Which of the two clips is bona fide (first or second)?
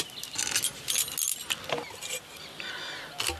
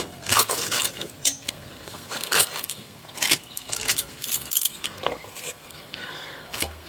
first